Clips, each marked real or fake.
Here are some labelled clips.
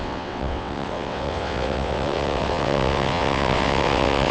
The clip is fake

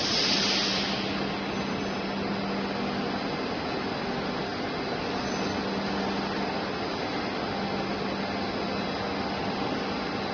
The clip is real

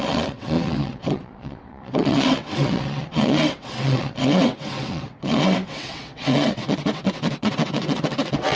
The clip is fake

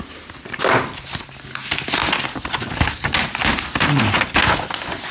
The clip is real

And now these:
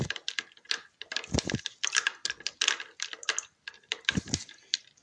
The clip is real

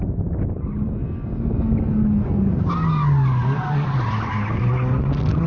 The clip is real